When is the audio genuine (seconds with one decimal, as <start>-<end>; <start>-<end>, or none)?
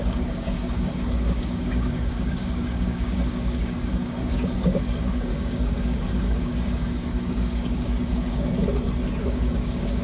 8.5-9.2